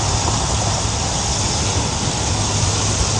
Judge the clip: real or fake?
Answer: real